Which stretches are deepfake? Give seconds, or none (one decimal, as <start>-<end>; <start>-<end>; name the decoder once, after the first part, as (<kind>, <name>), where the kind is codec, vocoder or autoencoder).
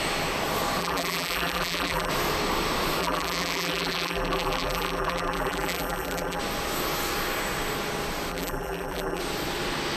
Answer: 0.8-2.1 (vocoder, BigVGAN v2); 3.0-6.4; 8.3-9.2